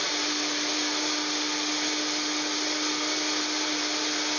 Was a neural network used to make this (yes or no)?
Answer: no